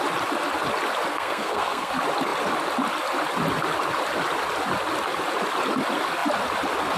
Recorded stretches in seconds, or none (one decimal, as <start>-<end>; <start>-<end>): 0.0-1.1; 1.9-7.0